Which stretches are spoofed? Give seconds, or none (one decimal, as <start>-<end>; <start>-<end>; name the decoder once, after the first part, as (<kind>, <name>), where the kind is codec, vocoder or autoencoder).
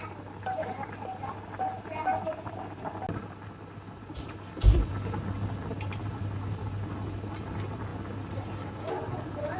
none